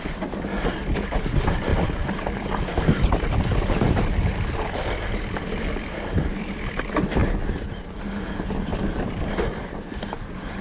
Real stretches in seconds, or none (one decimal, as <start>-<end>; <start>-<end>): 0.0-1.7; 6.6-8.7; 10.1-10.6